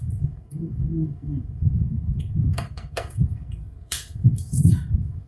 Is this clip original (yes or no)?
no